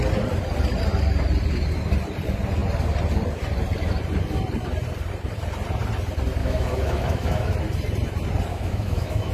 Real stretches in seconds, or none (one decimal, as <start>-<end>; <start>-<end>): 0.0-6.4; 7.5-8.5